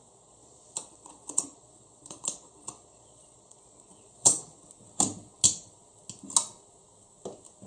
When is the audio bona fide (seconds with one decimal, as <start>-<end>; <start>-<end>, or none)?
4.6-7.7